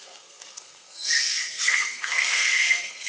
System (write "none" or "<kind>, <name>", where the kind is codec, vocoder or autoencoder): codec, SNAC